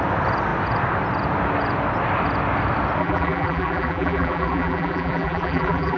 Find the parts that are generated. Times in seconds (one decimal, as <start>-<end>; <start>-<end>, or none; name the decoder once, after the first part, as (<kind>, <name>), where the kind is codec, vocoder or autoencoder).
3.0-6.0 (vocoder, BigVGAN v2)